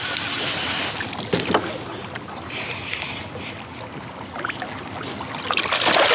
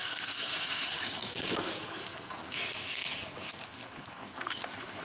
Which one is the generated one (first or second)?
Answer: second